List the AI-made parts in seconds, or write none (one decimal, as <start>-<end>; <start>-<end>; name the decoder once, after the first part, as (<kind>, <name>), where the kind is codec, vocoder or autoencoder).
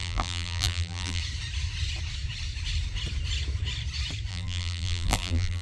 0.0-1.2 (vocoder, BigVGAN v2); 4.3-5.6